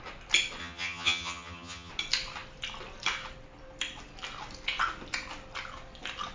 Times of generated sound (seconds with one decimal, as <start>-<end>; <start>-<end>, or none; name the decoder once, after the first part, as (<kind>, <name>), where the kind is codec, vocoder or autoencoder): 0.6-1.9 (vocoder, HiFi-GAN)